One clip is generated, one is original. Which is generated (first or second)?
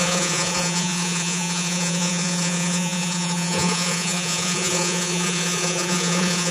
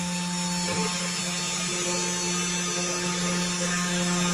first